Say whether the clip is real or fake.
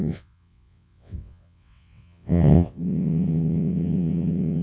fake